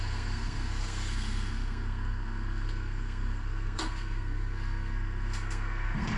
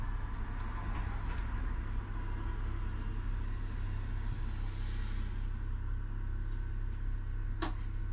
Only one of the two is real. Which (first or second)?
second